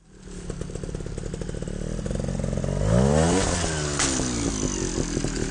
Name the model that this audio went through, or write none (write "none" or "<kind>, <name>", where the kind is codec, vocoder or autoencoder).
none